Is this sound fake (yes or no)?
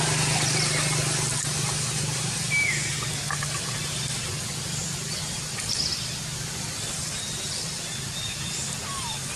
no